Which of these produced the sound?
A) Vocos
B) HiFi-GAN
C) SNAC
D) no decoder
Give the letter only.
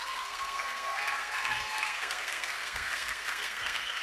C